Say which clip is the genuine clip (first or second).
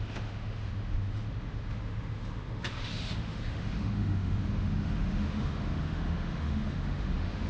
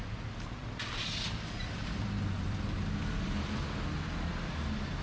second